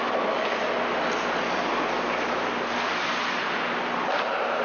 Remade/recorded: recorded